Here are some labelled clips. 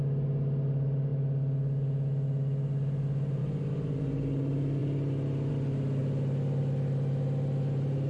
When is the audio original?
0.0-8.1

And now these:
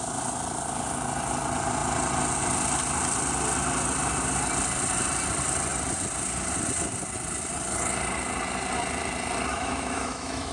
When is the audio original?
0.0-9.5

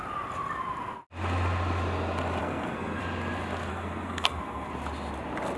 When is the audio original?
0.0-2.4; 3.0-3.7; 4.7-5.6

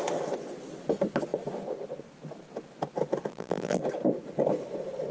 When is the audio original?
0.0-3.3; 3.8-5.1

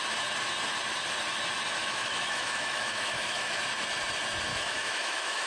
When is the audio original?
0.0-1.8; 3.6-4.5